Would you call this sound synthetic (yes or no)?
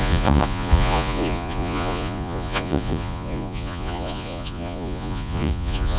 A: yes